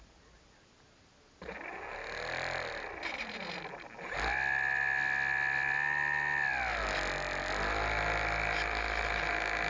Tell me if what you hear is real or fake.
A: real